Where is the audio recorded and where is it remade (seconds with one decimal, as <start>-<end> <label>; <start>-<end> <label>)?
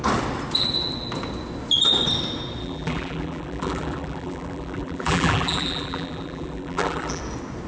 0.0-2.6 recorded; 2.6-7.2 remade; 7.2-7.7 recorded